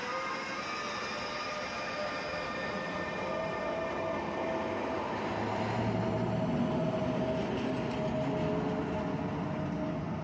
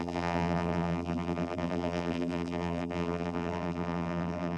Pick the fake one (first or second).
second